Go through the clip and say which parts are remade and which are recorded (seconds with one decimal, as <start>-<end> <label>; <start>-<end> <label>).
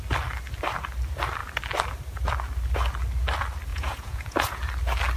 0.0-3.7 recorded; 3.7-4.6 remade; 4.6-5.2 recorded